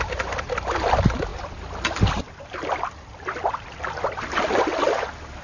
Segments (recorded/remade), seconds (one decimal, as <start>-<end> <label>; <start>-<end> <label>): 0.0-5.4 recorded